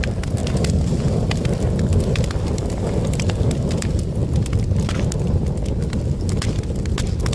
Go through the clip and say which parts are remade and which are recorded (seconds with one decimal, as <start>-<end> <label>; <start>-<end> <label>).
0.0-0.4 remade; 0.4-1.1 recorded; 1.1-4.2 remade; 4.2-7.3 recorded